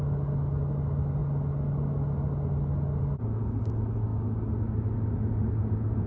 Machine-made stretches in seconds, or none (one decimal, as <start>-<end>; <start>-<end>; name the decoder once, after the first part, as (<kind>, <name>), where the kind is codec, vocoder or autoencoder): none